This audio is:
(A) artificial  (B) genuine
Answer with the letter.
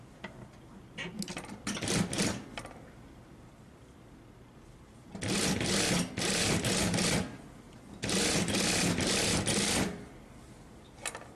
B